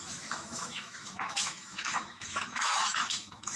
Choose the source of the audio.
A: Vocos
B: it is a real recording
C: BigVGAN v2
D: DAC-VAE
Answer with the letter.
D